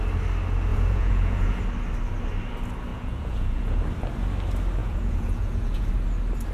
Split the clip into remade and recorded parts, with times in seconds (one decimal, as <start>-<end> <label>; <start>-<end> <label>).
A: 0.0-0.7 recorded; 0.7-1.6 remade; 1.6-2.9 recorded; 2.9-3.8 remade; 3.8-4.8 recorded; 4.8-5.9 remade; 5.9-6.5 recorded